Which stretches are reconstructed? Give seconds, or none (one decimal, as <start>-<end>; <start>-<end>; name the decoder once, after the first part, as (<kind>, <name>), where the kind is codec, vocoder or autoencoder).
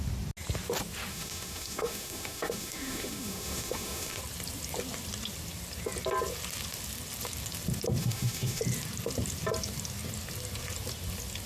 1.1-4.2 (autoencoder, DAC-VAE); 8.0-8.6